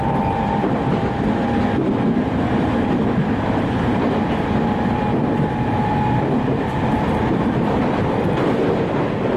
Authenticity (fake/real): fake